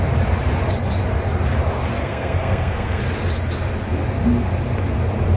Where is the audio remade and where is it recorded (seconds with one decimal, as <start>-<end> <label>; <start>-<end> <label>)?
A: 0.0-2.0 recorded; 2.0-3.0 remade; 3.0-5.4 recorded

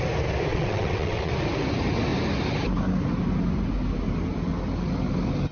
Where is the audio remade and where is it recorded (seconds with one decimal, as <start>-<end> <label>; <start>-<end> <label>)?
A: 0.0-0.5 recorded; 0.5-1.3 remade; 1.3-5.5 recorded

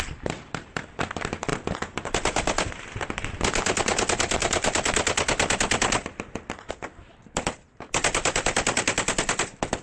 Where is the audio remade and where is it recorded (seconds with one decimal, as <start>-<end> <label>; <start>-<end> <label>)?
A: 0.0-9.8 remade

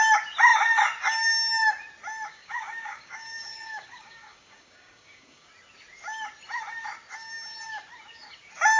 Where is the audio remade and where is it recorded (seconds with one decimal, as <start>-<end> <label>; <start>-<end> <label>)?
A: 0.0-2.3 recorded; 2.3-5.5 remade; 5.5-8.8 recorded

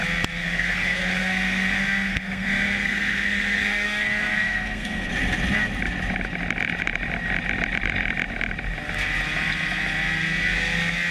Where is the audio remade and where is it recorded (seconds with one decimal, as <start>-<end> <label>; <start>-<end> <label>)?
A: 0.0-0.4 recorded; 0.4-5.1 remade; 5.1-11.1 recorded

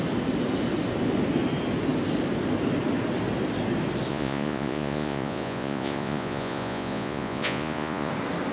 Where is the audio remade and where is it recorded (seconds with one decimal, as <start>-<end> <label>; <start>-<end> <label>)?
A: 0.0-4.1 recorded; 4.1-8.1 remade; 8.1-8.5 recorded